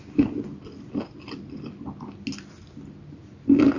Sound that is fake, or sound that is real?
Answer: real